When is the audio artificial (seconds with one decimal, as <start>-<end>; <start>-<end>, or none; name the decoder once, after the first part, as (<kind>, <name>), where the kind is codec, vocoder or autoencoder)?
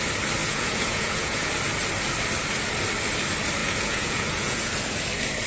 0.4-1.5 (vocoder, Vocos); 3.6-4.7